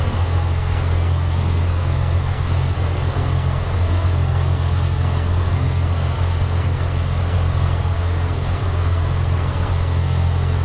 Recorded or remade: remade